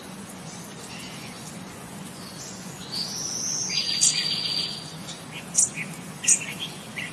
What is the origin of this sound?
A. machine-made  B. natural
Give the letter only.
A